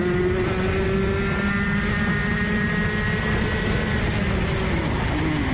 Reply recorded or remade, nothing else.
recorded